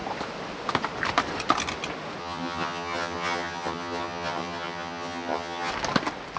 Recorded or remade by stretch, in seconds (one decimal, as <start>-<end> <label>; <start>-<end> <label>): 0.0-2.2 recorded; 2.2-5.7 remade; 5.7-6.4 recorded